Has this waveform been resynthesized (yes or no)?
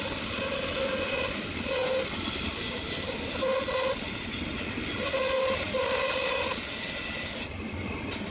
no